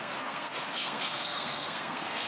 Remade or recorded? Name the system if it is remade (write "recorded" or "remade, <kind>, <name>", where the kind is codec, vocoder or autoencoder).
remade, codec, SNAC